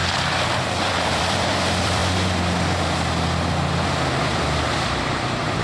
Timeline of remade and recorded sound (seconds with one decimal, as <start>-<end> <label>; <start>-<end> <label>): 0.0-0.9 recorded; 0.9-2.0 remade; 2.0-4.2 recorded; 4.2-5.6 remade